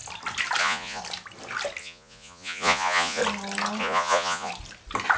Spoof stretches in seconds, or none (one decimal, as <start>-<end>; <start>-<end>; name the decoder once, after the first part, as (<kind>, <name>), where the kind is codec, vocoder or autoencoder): 0.6-1.0 (vocoder, Vocos); 1.8-3.2; 3.8-4.5